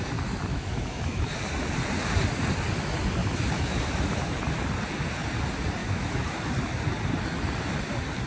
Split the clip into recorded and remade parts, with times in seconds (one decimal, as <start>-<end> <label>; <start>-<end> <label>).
0.0-0.5 recorded; 0.5-1.3 remade; 1.3-3.2 recorded; 3.2-4.4 remade; 4.4-5.8 recorded; 5.8-6.5 remade; 6.5-8.3 recorded